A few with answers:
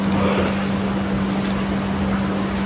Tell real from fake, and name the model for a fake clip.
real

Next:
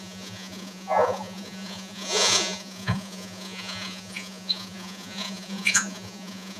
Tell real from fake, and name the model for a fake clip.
fake, vocoder, Vocos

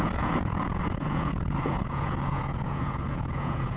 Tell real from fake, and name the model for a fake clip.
fake, vocoder, Vocos